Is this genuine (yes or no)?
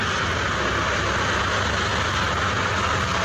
yes